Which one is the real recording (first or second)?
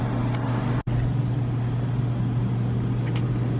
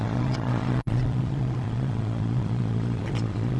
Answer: first